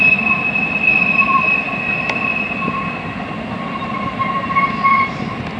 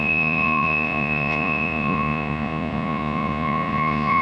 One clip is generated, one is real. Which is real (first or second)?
first